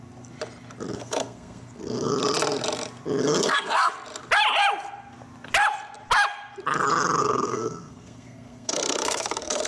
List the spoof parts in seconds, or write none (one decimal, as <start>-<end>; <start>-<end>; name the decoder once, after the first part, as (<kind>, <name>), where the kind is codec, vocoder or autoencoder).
0.9-2.1 (codec, SNAC); 3.2-3.9; 7.2-9.7